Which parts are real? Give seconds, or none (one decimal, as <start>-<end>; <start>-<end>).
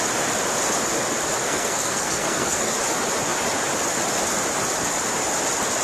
0.0-1.4; 2.7-5.8